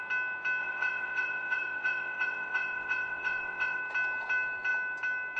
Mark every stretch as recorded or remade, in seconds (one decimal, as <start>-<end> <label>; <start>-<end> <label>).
0.0-0.6 recorded; 0.6-3.8 remade; 3.8-5.4 recorded

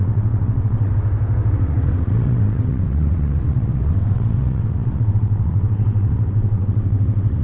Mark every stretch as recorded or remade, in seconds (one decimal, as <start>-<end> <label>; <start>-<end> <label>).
0.0-0.9 remade; 0.9-1.5 recorded; 1.5-7.4 remade

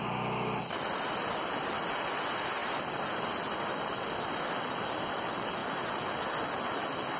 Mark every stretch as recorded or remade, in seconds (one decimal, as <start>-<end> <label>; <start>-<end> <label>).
0.0-7.2 recorded

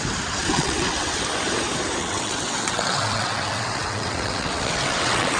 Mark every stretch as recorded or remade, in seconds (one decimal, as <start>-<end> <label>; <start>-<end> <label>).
0.0-0.4 recorded; 0.4-1.2 remade; 1.2-2.0 recorded; 2.0-5.4 remade

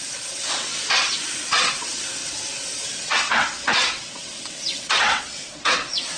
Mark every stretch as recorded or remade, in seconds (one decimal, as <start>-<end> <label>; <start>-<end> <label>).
0.0-6.2 remade